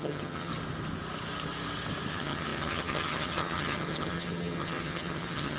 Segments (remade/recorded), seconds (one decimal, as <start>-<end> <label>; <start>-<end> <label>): 0.0-0.5 remade; 0.5-2.1 recorded; 2.1-5.6 remade